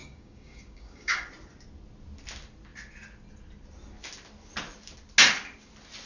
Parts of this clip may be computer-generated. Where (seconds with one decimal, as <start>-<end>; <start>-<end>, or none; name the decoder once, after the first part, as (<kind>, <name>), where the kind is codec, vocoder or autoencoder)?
0.0-1.3 (codec, DAC)